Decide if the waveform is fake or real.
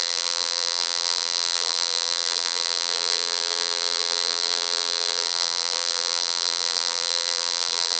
fake